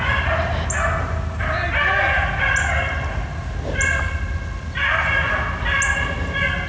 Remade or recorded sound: recorded